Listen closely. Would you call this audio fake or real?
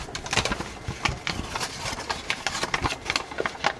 real